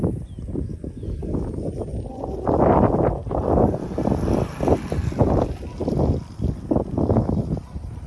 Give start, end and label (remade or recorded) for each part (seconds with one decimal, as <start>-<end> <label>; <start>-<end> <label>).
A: 0.0-8.1 recorded